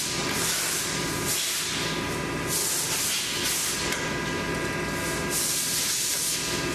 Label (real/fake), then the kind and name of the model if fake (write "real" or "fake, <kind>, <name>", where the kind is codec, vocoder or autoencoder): real